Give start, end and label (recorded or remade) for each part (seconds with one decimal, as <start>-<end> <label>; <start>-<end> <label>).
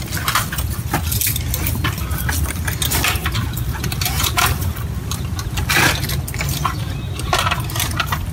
0.0-3.2 recorded; 3.2-5.9 remade; 5.9-8.3 recorded